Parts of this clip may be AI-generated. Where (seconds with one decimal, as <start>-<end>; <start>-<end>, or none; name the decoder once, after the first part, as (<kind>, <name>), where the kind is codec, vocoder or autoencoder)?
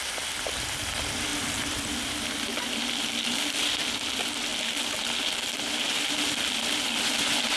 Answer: 0.0-4.5 (vocoder, BigVGAN v2); 6.2-7.6